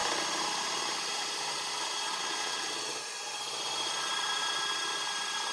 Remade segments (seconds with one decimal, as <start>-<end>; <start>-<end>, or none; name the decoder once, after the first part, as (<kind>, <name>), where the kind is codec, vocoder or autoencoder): 2.1-3.0 (vocoder, WaveNeXt)